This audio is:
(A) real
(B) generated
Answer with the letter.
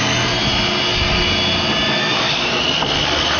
A